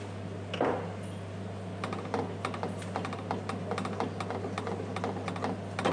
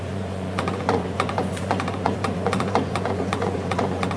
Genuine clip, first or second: first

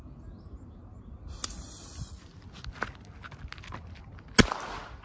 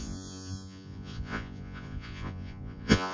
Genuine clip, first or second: first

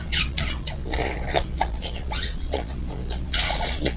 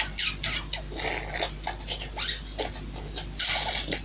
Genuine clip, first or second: second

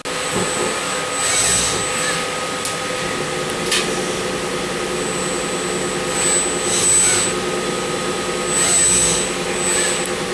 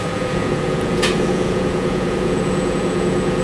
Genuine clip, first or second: first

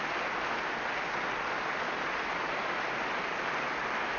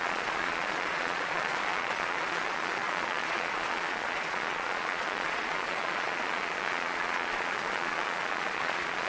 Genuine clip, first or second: first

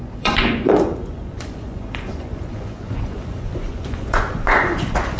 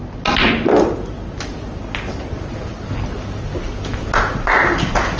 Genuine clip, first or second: second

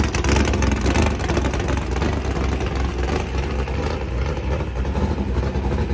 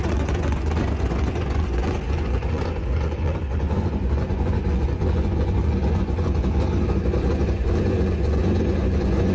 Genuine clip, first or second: first